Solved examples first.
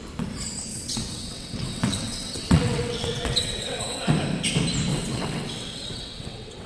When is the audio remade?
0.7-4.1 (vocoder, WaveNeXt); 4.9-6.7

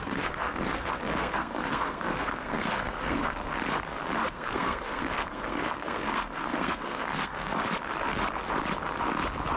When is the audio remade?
0.0-3.4 (codec, SNAC); 4.3-7.6